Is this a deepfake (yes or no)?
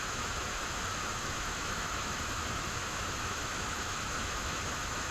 yes